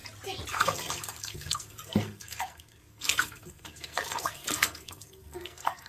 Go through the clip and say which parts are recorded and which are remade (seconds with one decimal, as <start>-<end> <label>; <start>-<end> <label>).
0.0-0.5 recorded; 0.5-5.9 remade